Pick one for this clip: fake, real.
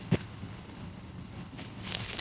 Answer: fake